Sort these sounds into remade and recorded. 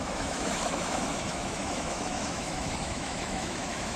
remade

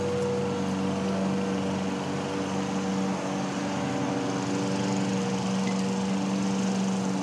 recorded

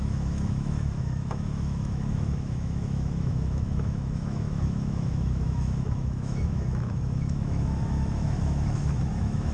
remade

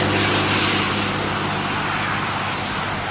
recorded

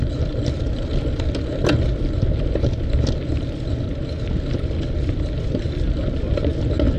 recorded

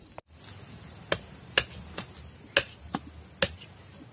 recorded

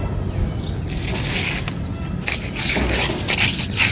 recorded